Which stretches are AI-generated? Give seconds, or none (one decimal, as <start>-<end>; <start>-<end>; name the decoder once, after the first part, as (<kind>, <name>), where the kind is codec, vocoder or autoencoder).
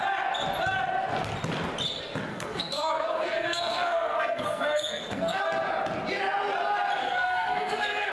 2.3-5.4 (codec, SNAC); 7.0-8.1